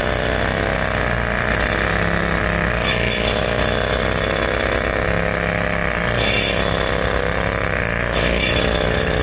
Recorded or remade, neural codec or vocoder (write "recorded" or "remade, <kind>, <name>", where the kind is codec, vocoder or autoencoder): recorded